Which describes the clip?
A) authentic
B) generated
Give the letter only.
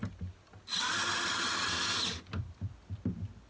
A